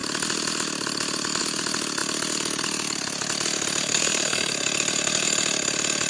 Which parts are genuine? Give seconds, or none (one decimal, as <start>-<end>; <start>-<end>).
0.0-3.8; 4.5-6.1